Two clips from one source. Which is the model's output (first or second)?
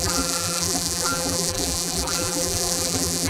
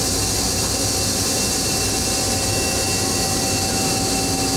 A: first